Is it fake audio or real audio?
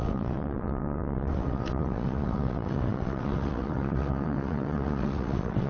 fake